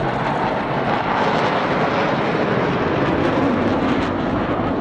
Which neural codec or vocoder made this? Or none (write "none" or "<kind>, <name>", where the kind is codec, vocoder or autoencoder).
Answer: none